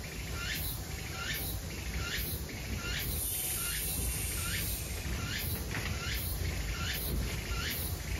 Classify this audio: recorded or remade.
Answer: recorded